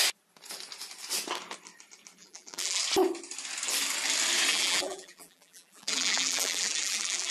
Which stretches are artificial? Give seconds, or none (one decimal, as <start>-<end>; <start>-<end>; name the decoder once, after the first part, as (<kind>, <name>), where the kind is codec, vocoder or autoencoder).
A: 2.2-2.8 (vocoder, BigVGAN v2); 4.5-7.3